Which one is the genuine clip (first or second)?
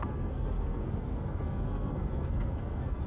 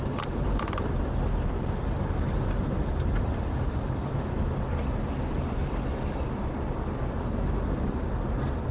second